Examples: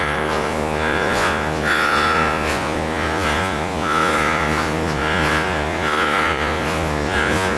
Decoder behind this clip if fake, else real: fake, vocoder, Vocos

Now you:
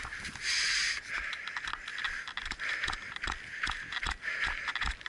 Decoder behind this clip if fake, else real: real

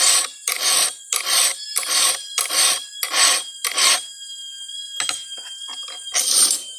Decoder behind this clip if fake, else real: real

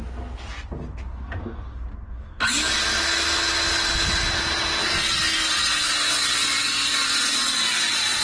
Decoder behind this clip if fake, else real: real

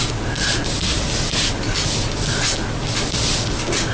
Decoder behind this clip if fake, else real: real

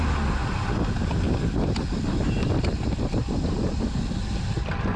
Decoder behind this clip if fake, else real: real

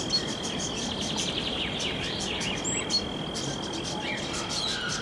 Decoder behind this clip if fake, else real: real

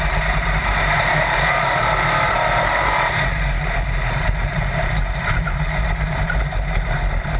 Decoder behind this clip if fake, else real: fake, vocoder, BigVGAN v2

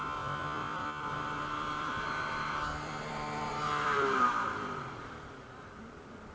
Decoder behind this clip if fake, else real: fake, vocoder, BigVGAN v2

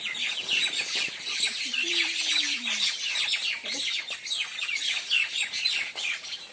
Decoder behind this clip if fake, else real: fake, vocoder, BigVGAN v2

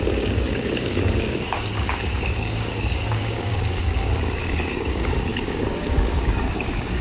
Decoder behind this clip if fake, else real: fake, codec, DAC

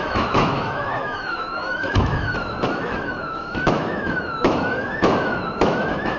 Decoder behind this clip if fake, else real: fake, autoencoder, DAC-VAE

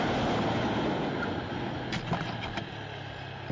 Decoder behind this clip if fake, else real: real